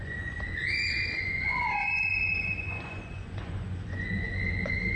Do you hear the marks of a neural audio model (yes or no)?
yes